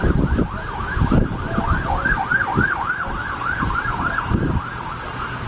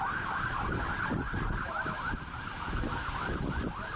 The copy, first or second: second